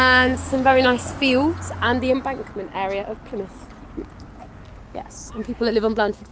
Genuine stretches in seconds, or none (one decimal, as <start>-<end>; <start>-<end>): 1.0-4.8